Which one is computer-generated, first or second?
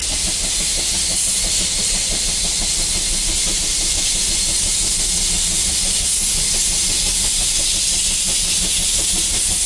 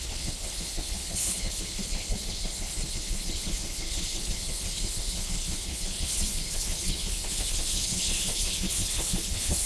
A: second